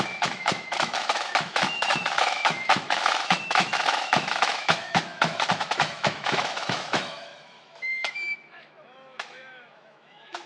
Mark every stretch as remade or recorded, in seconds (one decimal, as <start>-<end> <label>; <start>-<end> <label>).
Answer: 0.0-10.5 remade

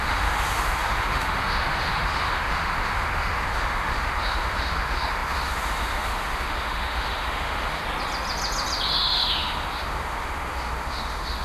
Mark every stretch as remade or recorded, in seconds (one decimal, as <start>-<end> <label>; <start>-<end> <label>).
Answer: 0.0-7.8 remade; 7.8-8.9 recorded; 8.9-11.4 remade

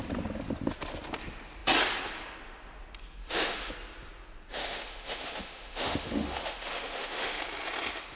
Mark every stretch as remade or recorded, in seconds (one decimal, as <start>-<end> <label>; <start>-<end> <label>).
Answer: 0.0-3.2 recorded; 3.2-3.7 remade; 3.7-4.5 recorded; 4.5-7.4 remade; 7.4-8.2 recorded

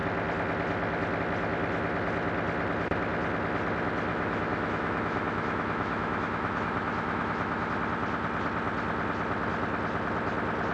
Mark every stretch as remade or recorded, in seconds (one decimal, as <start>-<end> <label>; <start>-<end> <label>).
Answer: 0.0-4.1 recorded; 4.1-7.7 remade; 7.7-10.7 recorded